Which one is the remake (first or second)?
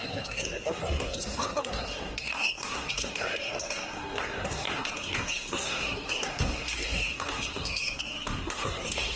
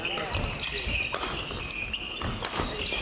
first